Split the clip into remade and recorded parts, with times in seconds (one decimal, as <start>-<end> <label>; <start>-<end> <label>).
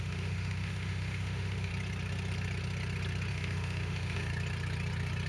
0.0-1.7 remade; 1.7-3.3 recorded; 3.3-4.3 remade; 4.3-5.3 recorded